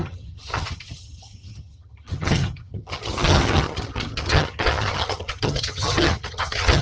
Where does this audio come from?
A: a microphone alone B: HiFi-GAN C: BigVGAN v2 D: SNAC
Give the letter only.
B